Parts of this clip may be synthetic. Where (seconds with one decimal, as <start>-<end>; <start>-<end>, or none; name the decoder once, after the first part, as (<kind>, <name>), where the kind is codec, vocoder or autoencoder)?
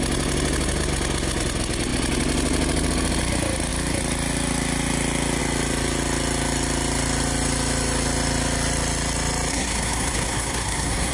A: 9.5-11.1 (codec, SNAC)